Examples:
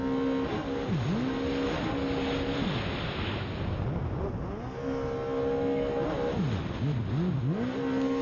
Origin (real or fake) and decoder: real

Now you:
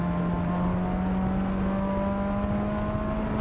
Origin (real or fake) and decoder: real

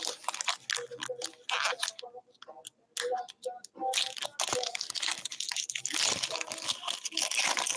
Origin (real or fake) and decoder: real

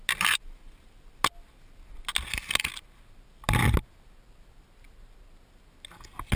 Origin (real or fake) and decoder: real